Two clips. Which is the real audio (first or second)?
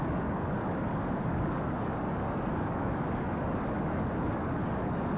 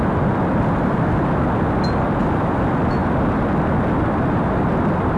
second